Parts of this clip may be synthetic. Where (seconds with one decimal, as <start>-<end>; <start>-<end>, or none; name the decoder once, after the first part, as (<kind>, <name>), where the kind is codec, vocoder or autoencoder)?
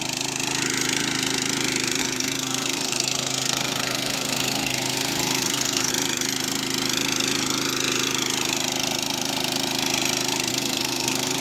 2.0-5.9 (codec, SNAC); 10.5-11.4